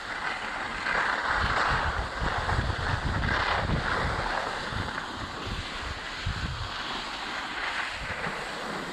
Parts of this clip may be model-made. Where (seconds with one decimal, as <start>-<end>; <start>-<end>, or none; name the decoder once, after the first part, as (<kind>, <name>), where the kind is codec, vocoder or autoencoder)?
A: none